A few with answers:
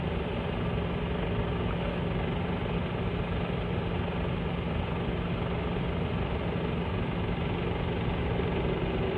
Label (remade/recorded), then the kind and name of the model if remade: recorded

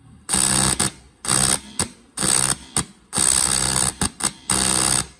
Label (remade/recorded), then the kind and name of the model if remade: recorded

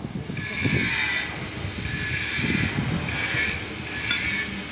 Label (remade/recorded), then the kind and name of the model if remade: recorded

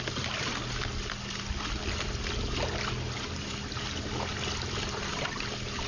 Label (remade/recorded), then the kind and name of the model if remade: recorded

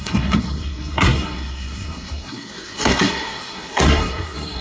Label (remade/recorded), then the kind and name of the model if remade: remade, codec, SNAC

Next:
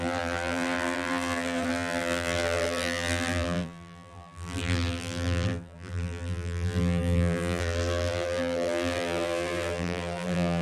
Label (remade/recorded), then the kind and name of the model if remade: remade, vocoder, BigVGAN v2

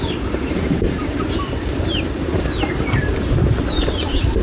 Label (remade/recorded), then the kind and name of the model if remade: remade, vocoder, BigVGAN v2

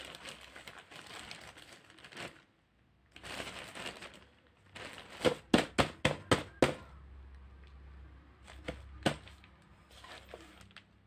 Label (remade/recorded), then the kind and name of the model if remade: recorded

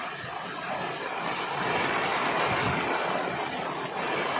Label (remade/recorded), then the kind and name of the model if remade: recorded